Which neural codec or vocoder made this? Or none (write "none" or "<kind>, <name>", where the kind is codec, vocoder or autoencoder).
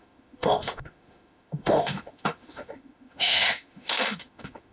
autoencoder, DAC-VAE